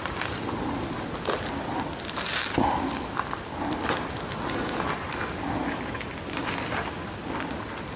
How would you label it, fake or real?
real